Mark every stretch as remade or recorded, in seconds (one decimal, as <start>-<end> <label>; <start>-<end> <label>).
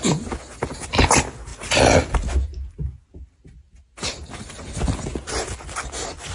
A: 0.0-6.3 recorded